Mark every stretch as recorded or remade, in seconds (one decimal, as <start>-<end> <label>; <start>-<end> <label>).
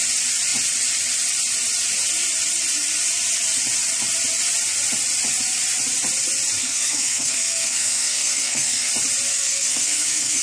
0.0-6.6 recorded; 6.6-8.9 remade; 8.9-9.3 recorded; 9.3-10.4 remade